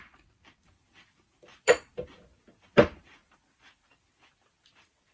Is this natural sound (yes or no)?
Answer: yes